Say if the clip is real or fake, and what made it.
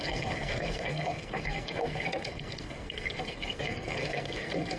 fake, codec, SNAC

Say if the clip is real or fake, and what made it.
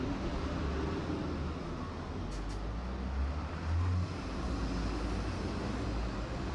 real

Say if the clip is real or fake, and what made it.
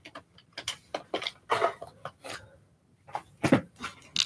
real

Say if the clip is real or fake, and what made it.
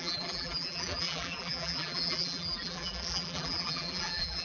fake, vocoder, BigVGAN v2